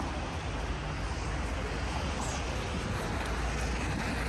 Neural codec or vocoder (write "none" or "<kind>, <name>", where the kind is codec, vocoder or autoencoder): none